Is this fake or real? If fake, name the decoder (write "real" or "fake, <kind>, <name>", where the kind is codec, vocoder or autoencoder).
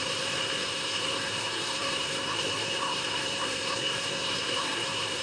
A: fake, codec, SNAC